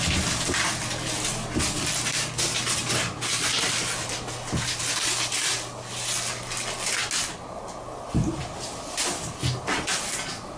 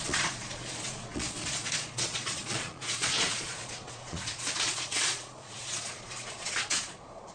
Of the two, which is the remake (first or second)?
second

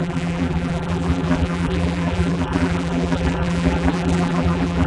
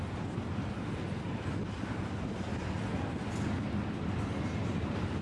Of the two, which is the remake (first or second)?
first